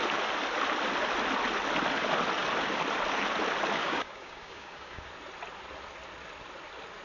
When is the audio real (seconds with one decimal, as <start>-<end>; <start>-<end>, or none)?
0.0-3.8; 5.1-7.0